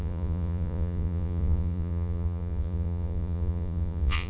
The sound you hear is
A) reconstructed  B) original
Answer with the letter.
A